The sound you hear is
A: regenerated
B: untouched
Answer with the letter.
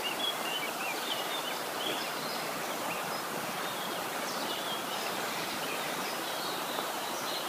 B